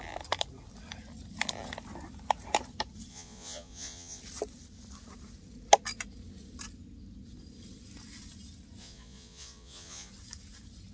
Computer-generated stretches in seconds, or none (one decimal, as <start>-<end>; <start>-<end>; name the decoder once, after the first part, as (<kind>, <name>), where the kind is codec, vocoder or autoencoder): 3.1-4.2 (vocoder, Vocos); 8.8-10.1

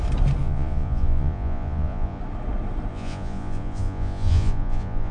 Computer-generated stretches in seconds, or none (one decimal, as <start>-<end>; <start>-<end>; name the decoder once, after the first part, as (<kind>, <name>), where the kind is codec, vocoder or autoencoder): 0.4-2.2 (vocoder, Vocos); 2.9-5.1

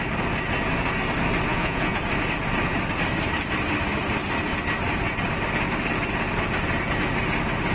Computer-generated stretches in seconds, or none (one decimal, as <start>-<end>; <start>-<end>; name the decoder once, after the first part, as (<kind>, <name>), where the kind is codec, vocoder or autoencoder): 1.5-2.0 (vocoder, Vocos)

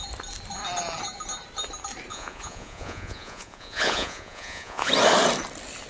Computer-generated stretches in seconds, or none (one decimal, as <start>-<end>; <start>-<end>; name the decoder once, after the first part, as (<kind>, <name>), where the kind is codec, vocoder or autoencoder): 2.1-4.9 (vocoder, Vocos)

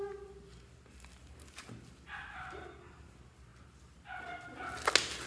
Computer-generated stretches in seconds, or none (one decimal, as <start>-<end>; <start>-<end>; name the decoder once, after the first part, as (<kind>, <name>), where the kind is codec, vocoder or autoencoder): none

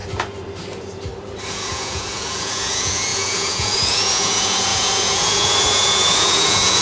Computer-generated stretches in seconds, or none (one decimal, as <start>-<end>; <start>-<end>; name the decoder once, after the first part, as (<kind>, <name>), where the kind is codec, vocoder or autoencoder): 1.5-6.8 (vocoder, Vocos)